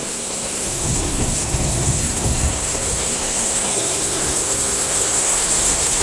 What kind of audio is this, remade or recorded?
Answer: remade